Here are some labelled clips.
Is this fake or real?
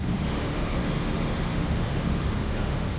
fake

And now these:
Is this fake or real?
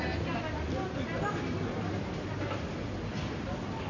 real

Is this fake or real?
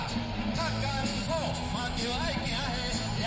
real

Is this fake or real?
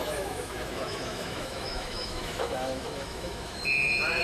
fake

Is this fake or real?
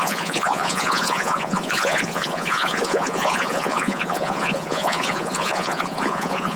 fake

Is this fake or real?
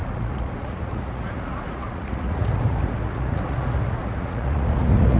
fake